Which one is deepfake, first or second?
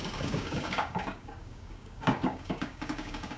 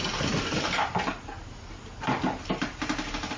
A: first